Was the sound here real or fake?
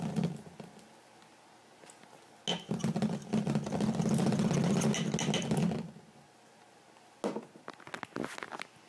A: real